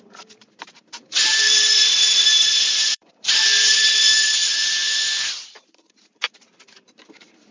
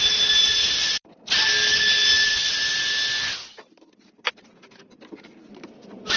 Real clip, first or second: second